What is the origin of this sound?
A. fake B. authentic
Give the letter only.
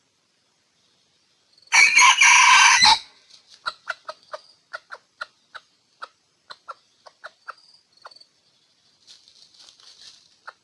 B